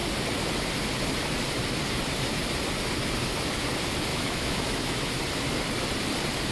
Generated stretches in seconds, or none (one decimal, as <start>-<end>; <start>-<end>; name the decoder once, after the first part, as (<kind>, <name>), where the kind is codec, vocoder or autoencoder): 4.1-5.2 (autoencoder, DAC-VAE)